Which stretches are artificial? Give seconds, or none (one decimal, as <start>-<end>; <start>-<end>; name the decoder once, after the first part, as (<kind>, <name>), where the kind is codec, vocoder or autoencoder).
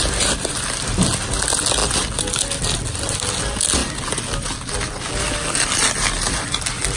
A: none